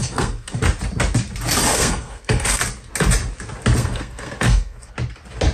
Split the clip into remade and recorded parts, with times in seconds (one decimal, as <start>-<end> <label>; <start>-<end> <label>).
0.0-0.6 remade; 0.6-1.7 recorded; 1.7-2.6 remade; 2.6-3.8 recorded; 3.8-4.9 remade; 4.9-5.5 recorded